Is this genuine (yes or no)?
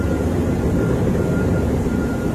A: no